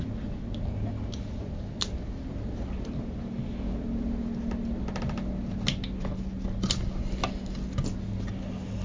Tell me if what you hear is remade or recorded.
recorded